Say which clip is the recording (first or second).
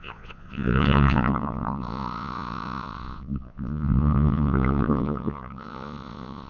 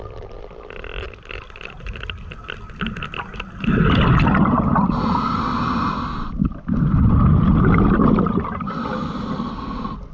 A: second